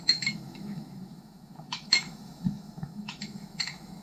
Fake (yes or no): yes